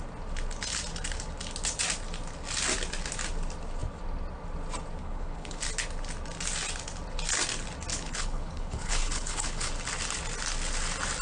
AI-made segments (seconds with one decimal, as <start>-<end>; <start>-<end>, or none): 5.0-5.6; 7.9-9.7